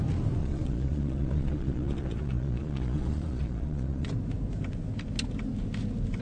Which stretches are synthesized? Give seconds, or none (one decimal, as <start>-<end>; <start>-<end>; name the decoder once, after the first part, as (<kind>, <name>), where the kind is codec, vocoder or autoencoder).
0.4-4.1 (vocoder, Vocos)